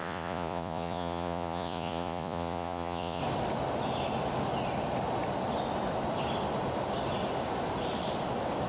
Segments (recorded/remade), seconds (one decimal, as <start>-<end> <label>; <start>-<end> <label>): 0.0-3.2 remade; 3.2-8.7 recorded